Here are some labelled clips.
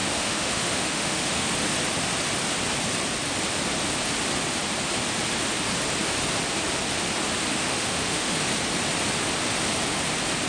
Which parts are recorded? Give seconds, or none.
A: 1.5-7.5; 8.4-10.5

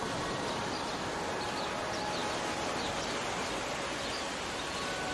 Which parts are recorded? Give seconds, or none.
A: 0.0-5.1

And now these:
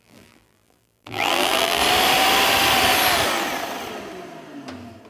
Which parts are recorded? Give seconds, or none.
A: 1.8-5.1